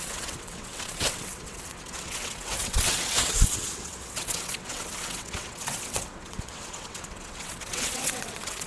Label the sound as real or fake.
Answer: fake